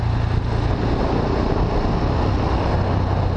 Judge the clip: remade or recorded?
recorded